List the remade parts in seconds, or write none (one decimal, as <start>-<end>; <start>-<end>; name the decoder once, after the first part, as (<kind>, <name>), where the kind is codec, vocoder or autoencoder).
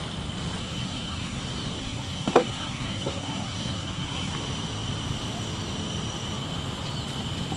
0.6-1.4 (codec, SNAC); 1.8-4.3